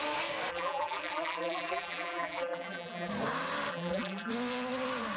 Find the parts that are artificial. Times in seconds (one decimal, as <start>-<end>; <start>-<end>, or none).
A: 0.5-3.1; 3.7-4.3